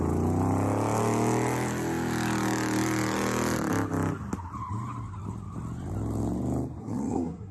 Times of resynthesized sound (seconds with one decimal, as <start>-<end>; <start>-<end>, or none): 6.8-7.5